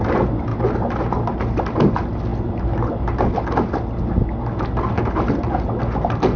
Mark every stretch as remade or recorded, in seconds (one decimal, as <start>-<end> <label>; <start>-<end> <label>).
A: 0.0-6.4 recorded